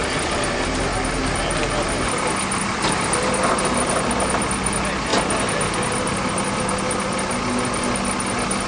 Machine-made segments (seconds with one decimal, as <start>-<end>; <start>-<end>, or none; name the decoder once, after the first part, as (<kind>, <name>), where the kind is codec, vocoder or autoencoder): none